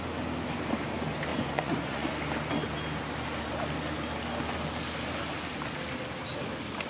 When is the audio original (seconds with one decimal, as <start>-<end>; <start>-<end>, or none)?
0.0-1.3; 2.1-6.9

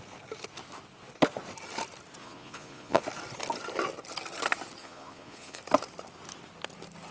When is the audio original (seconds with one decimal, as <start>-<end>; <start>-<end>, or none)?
0.0-2.2; 3.0-4.8; 5.6-7.1

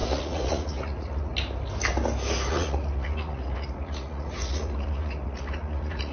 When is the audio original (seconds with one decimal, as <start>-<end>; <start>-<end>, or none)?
1.3-2.5